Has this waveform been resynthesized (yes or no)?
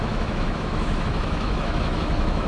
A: yes